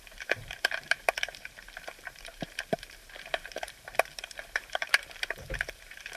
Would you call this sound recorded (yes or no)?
no